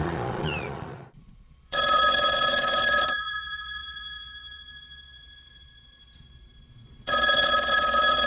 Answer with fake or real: fake